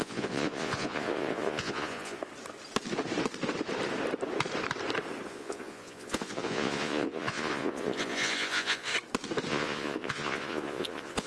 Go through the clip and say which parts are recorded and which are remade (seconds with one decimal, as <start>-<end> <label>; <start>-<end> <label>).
0.0-2.2 remade; 2.2-5.3 recorded; 5.3-8.9 remade; 8.9-9.5 recorded; 9.5-11.3 remade